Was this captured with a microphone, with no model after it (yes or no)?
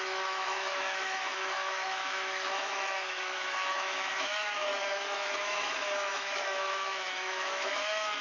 no